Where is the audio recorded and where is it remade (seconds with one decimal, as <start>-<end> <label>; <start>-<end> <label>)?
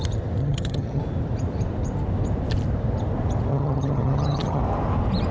0.0-0.4 recorded; 0.4-1.0 remade; 1.0-3.5 recorded; 3.5-4.6 remade; 4.6-5.3 recorded